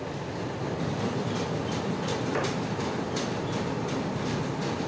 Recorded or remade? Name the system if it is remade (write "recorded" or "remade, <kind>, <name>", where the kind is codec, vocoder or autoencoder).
recorded